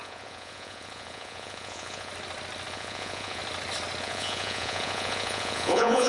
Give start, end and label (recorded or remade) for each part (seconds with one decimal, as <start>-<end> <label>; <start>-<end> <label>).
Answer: 0.0-2.1 remade; 2.1-2.7 recorded; 2.7-3.4 remade; 3.4-4.0 recorded; 4.0-6.1 remade